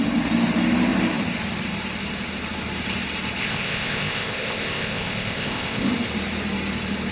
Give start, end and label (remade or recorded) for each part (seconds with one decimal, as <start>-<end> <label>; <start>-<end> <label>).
0.0-3.4 recorded; 3.4-5.9 remade; 5.9-7.1 recorded